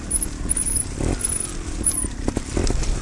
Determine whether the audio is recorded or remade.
recorded